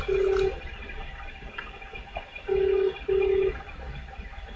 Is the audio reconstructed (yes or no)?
no